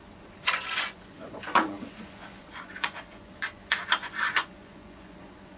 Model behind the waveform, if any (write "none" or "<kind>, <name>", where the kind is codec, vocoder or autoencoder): vocoder, Vocos